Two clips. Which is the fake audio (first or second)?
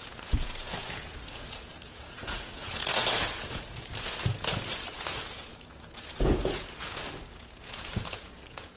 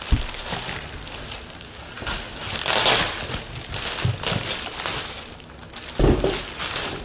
first